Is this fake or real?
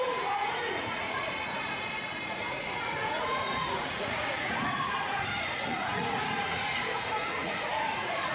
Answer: fake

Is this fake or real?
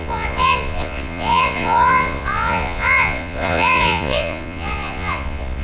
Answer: fake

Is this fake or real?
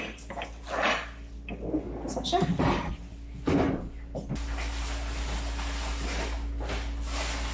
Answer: real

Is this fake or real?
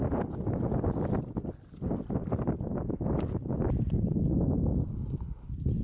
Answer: real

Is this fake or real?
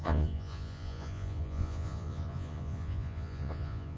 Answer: fake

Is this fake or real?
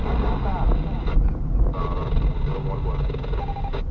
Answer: real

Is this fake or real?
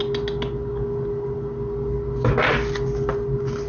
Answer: real